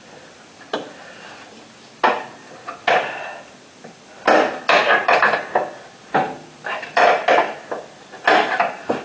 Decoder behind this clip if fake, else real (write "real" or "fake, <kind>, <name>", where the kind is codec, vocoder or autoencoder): real